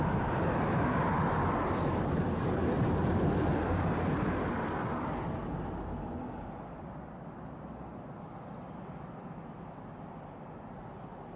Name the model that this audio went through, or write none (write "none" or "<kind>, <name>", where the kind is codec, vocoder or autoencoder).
none